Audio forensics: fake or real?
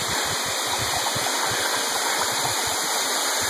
real